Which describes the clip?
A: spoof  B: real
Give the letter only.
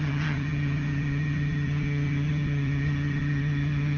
A